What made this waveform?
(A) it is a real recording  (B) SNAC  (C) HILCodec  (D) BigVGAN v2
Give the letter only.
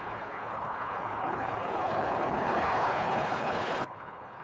C